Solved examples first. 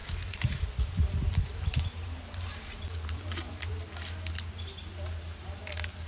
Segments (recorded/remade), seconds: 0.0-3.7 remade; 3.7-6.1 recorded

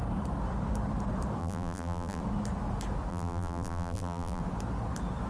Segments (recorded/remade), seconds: 0.0-1.4 recorded; 1.4-2.2 remade; 2.2-3.1 recorded; 3.1-4.4 remade; 4.4-5.3 recorded

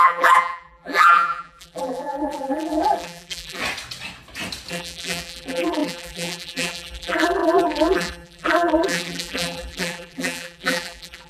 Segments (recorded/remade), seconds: 0.0-3.6 remade; 3.6-4.7 recorded; 4.7-11.3 remade